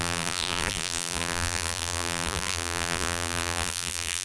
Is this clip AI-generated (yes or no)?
yes